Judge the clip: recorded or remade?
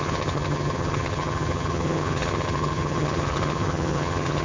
remade